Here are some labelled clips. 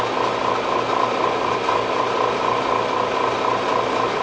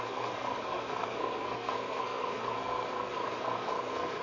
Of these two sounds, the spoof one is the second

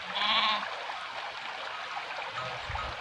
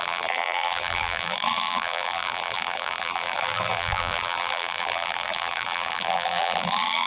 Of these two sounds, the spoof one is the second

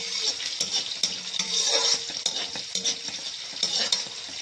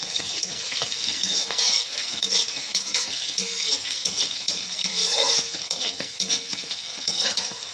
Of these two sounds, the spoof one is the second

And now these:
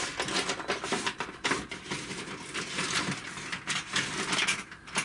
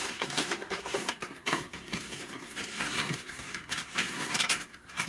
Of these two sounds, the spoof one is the second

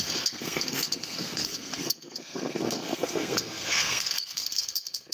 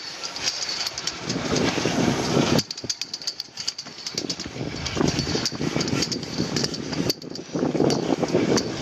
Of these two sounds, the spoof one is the first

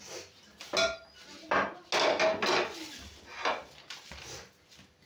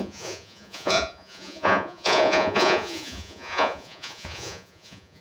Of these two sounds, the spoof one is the second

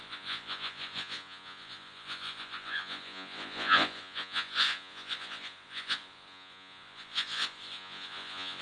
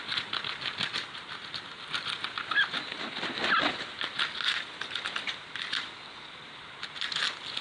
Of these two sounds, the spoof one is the first